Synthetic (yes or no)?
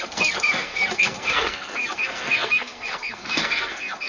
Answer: yes